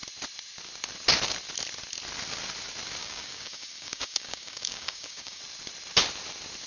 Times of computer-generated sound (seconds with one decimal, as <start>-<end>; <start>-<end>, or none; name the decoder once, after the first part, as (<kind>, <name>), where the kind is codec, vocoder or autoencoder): 3.0-5.4 (codec, DAC)